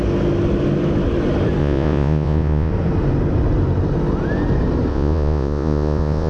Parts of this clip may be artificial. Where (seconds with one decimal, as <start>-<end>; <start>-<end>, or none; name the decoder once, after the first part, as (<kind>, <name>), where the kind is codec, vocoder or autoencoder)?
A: 1.6-2.7 (vocoder, Vocos); 4.9-6.3